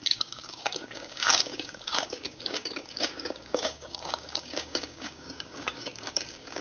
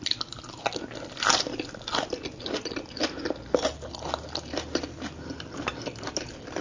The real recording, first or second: second